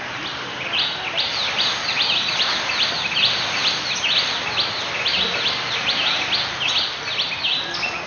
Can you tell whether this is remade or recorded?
recorded